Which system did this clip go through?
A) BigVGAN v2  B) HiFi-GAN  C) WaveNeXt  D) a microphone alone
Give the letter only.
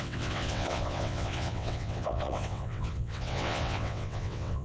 C